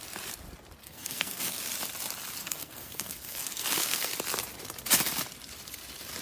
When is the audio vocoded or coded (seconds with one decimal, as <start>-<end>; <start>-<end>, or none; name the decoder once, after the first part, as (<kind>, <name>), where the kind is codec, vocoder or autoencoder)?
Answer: 0.8-1.6 (codec, SNAC); 2.4-4.1